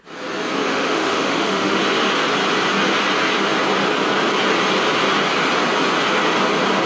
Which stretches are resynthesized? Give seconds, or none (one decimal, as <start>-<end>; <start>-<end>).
0.7-1.8